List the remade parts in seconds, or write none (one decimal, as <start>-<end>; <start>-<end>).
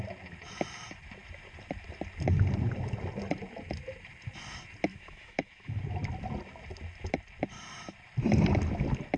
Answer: 4.9-5.8